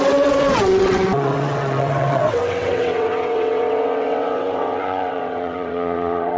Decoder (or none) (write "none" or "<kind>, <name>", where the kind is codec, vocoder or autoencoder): vocoder, WaveNeXt